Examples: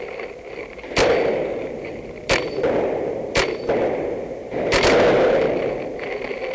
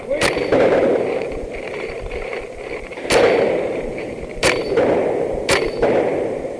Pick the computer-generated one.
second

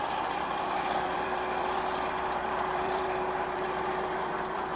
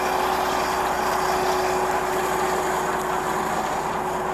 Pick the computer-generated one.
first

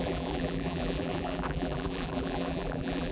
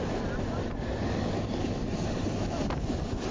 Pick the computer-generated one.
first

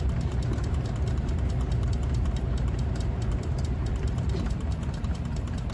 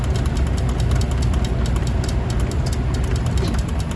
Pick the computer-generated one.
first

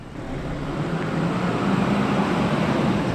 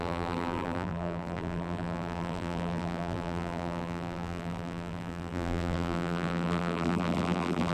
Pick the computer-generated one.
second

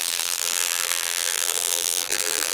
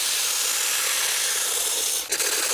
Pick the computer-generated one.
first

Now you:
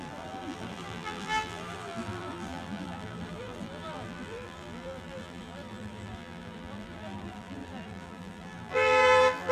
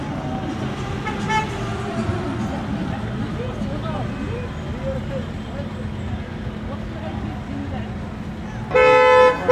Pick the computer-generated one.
first